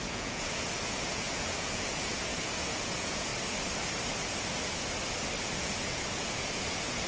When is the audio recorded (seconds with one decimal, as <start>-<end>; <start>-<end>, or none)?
3.3-5.6